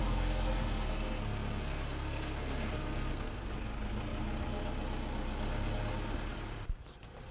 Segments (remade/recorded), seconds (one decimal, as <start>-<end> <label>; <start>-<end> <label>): 0.0-3.5 remade; 3.5-7.3 recorded